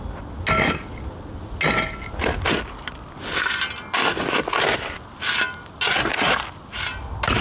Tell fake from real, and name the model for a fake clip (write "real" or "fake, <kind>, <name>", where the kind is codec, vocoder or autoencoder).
real